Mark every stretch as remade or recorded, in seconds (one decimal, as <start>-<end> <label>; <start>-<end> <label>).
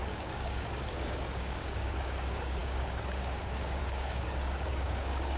0.0-5.4 remade